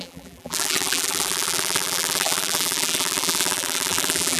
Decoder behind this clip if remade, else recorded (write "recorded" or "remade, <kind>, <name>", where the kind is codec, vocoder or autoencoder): remade, vocoder, BigVGAN v2